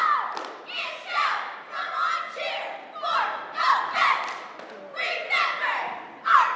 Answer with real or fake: real